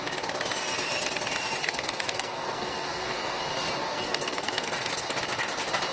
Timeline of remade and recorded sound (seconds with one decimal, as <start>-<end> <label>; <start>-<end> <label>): 0.0-1.6 recorded; 1.6-3.4 remade; 3.4-3.9 recorded; 3.9-4.9 remade; 4.9-5.9 recorded